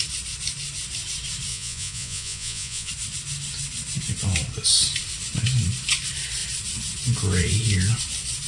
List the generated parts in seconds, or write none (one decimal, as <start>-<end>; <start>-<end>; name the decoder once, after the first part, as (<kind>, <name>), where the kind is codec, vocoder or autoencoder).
1.5-2.9 (vocoder, Vocos)